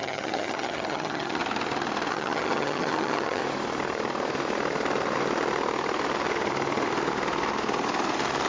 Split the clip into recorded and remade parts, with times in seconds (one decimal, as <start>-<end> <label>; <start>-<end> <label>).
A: 0.0-1.4 remade; 1.4-2.1 recorded; 2.1-3.4 remade; 3.4-8.5 recorded